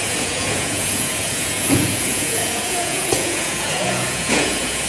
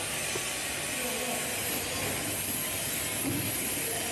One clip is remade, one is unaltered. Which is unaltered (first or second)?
second